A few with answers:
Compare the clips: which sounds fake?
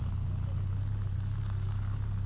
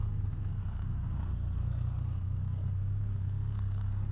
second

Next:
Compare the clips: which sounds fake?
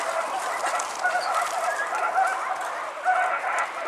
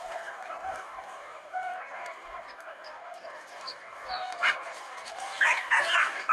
second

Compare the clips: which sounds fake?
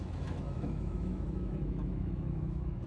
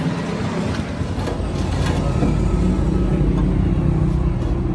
first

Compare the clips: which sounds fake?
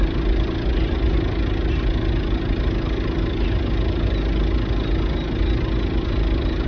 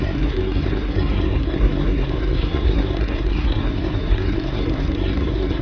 second